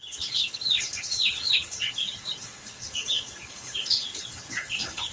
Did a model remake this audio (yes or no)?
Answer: yes